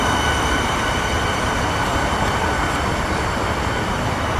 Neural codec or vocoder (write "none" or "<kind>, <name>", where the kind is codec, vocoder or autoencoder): vocoder, BigVGAN v2